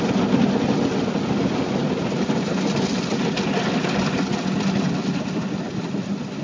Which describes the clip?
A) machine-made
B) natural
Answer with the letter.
B